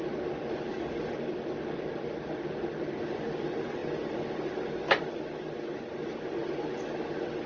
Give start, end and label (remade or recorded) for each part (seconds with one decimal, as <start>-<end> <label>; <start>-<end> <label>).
0.0-7.5 recorded